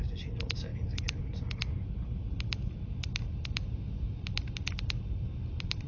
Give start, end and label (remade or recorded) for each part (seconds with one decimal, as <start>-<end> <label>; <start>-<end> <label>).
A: 0.0-2.2 recorded; 2.2-4.2 remade; 4.2-5.9 recorded

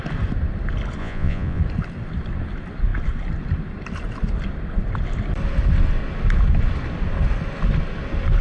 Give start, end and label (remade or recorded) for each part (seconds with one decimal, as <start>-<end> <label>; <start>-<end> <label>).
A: 0.0-1.0 recorded; 1.0-1.6 remade; 1.6-8.4 recorded

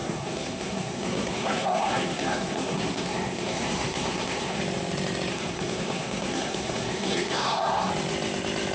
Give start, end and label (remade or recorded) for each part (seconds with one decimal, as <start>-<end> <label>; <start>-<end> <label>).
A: 0.0-4.6 remade; 4.6-5.3 recorded; 5.3-7.9 remade; 7.9-8.7 recorded

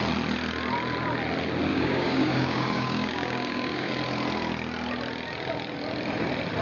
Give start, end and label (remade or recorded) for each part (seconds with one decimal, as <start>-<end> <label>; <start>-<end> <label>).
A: 0.0-1.7 recorded; 1.7-3.9 remade; 3.9-6.6 recorded

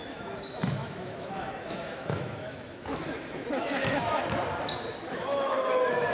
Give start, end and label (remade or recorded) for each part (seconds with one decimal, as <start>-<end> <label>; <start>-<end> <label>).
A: 0.0-4.2 remade; 4.2-4.9 recorded; 4.9-6.1 remade

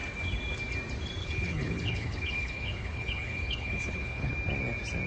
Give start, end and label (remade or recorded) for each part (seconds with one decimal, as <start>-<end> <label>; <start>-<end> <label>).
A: 0.0-1.2 recorded; 1.2-4.3 remade; 4.3-5.1 recorded

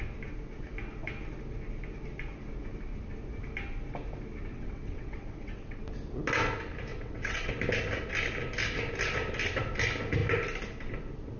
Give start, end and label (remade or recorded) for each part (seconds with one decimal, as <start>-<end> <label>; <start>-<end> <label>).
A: 0.0-4.5 recorded; 4.5-5.8 remade; 5.8-6.9 recorded; 6.9-7.5 remade; 7.5-11.4 recorded